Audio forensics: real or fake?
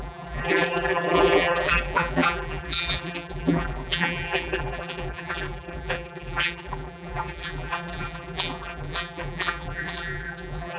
fake